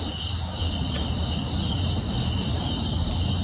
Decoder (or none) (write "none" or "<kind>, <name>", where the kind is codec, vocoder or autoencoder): none